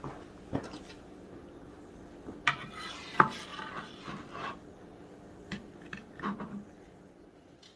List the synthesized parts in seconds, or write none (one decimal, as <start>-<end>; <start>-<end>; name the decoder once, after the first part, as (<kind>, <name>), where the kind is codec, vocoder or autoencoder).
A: none